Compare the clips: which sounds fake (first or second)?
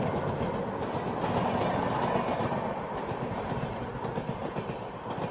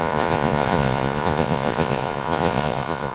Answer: second